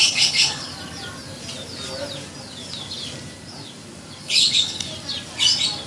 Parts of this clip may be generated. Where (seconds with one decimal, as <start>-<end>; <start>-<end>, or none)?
0.0-0.7; 4.2-4.9